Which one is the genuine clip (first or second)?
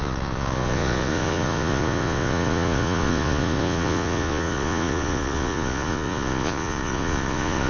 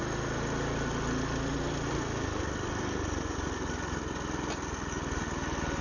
second